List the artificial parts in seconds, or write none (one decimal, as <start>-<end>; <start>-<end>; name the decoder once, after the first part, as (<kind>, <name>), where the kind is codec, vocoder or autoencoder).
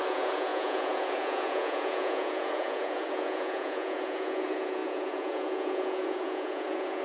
0.0-7.0 (vocoder, Vocos)